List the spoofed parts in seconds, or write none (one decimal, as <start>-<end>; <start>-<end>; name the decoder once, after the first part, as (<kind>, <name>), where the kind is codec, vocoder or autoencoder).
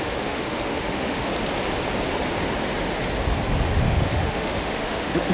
0.0-1.3 (autoencoder, DAC-VAE); 3.8-5.3